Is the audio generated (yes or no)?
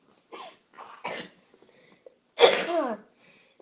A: no